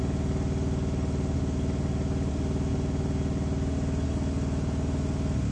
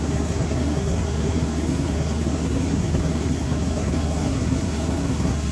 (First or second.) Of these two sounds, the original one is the first